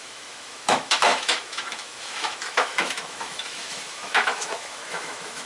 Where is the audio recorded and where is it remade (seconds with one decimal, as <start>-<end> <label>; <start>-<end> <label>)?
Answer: 0.0-5.5 remade